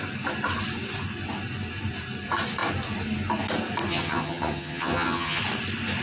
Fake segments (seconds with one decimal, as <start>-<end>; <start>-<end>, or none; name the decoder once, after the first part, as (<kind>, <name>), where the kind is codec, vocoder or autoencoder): 3.9-5.4 (vocoder, HiFi-GAN)

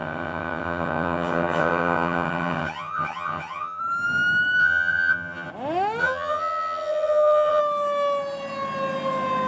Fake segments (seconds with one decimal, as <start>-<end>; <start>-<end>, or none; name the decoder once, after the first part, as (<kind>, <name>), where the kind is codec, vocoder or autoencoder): 0.0-3.8 (vocoder, HiFi-GAN); 4.6-5.5; 6.0-7.6

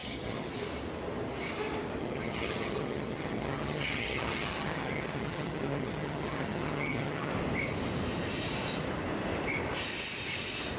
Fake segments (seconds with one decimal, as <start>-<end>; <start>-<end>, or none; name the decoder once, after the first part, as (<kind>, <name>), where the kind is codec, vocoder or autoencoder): 0.0-0.5 (vocoder, HiFi-GAN); 2.0-7.3

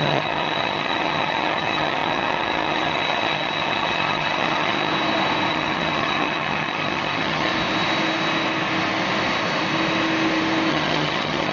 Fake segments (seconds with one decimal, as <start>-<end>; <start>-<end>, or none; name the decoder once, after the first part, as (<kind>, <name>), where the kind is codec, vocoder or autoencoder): 0.0-4.9 (vocoder, HiFi-GAN); 5.5-7.5; 10.7-11.5